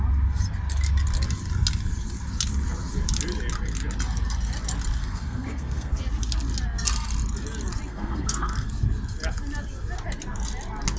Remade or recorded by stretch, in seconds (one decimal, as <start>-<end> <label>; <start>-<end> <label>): 0.0-5.0 recorded; 5.0-6.0 remade; 6.0-7.9 recorded; 7.9-8.7 remade; 8.7-11.0 recorded